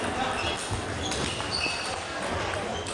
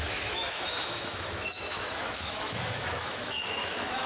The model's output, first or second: second